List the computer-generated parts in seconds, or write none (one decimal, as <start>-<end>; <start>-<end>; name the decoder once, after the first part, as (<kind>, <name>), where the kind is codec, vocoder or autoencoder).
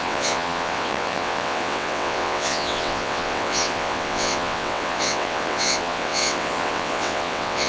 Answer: 0.0-7.7 (vocoder, WaveNeXt)